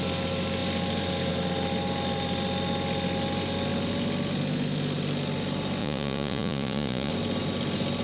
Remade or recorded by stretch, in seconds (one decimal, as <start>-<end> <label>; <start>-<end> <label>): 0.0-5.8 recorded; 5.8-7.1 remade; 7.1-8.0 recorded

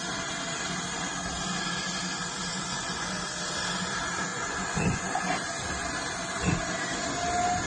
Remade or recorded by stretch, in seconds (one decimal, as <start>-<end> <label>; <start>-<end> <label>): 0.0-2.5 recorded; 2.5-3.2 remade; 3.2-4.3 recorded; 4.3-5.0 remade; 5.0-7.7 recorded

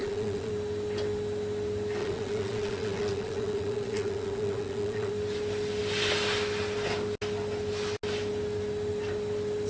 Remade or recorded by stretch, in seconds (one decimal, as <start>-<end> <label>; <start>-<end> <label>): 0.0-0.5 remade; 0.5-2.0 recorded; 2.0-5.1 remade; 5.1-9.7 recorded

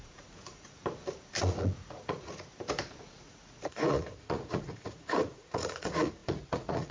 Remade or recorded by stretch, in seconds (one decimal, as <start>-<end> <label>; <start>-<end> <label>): 0.0-0.8 remade; 0.8-1.4 recorded; 1.4-2.5 remade; 2.5-3.0 recorded; 3.0-6.9 remade

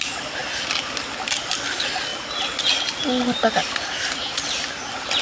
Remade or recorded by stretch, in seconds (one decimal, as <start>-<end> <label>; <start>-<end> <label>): 0.0-5.2 recorded